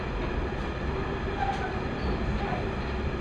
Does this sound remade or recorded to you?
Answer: recorded